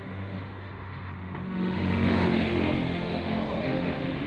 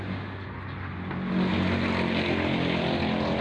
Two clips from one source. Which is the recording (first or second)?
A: second